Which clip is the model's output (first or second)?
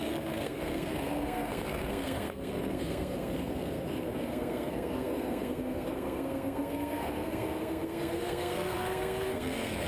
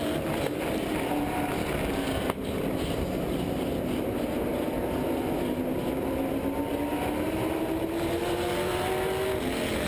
first